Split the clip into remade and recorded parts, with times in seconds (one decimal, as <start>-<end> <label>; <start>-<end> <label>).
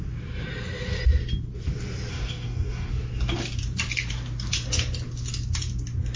0.0-2.1 recorded; 2.1-2.9 remade; 2.9-6.2 recorded